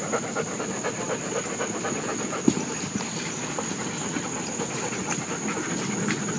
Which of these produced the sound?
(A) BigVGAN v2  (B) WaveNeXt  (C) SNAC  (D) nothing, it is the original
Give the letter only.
D